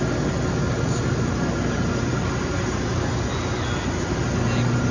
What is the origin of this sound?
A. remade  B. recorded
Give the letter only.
B